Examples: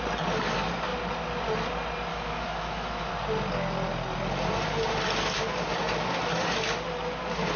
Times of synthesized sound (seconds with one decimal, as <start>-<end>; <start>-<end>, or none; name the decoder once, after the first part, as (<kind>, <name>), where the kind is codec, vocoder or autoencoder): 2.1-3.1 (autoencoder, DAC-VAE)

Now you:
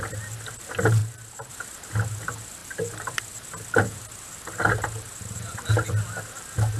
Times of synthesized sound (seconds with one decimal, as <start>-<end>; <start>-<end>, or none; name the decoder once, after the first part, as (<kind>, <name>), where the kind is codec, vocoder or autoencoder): none

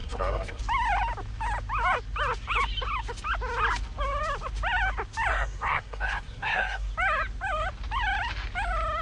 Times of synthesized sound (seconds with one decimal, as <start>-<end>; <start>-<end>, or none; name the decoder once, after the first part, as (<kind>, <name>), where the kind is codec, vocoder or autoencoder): 0.0-0.6 (codec, SNAC); 5.3-6.9

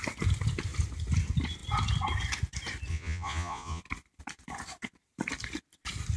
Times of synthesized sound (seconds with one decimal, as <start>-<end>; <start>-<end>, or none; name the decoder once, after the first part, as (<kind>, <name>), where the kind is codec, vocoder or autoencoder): 2.9-3.8 (vocoder, Vocos)

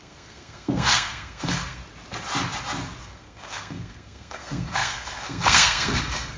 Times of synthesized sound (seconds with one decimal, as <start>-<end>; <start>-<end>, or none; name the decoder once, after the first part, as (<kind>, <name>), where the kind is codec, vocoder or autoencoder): 0.0-1.8 (codec, SNAC); 3.0-6.4